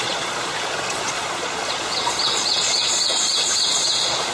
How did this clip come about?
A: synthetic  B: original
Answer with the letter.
A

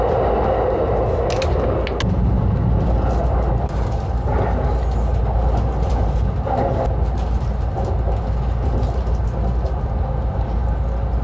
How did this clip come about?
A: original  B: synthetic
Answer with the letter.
A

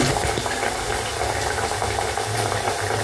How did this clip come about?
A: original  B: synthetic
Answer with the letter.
A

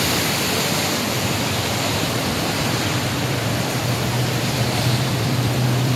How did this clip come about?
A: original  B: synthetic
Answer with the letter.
B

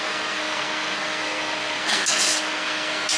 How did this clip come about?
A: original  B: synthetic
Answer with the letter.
B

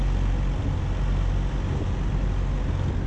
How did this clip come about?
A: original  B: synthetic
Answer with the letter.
A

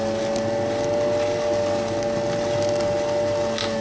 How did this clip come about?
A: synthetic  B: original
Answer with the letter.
B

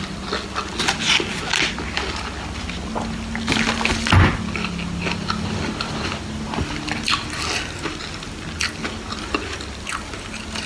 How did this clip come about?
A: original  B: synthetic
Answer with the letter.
A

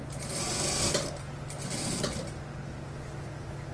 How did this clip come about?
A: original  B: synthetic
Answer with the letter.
A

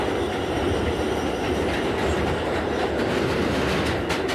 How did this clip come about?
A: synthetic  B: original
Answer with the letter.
B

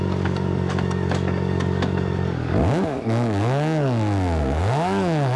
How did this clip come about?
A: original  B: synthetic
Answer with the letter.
B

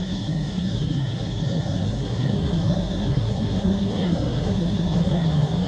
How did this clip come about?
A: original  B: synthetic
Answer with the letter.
B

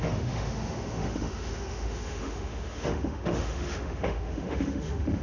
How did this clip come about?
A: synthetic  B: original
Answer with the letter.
A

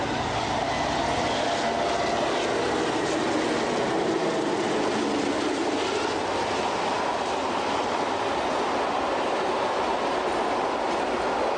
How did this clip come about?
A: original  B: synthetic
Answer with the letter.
A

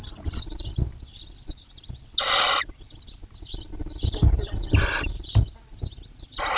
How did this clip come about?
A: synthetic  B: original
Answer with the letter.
B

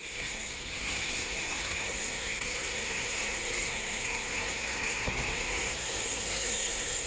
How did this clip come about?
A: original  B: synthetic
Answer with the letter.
B